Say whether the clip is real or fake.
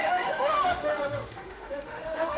fake